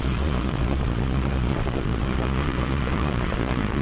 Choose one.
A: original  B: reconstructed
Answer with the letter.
B